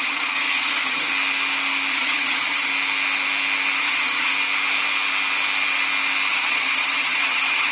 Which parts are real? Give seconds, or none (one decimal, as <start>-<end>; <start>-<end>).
1.1-1.9; 2.7-3.8; 4.3-6.3